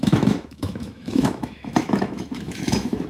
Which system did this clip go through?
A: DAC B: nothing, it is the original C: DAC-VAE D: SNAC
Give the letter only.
C